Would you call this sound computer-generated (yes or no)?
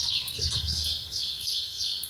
yes